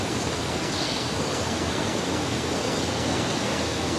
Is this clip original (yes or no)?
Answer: no